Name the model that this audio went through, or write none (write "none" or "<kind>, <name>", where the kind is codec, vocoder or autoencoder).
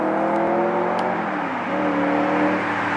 none